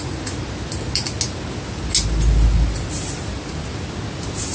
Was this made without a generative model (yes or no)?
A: yes